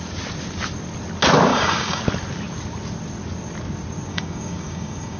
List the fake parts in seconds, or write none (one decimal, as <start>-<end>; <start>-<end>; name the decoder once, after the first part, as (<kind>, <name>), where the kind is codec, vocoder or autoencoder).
1.5-2.0 (codec, DAC); 4.1-5.2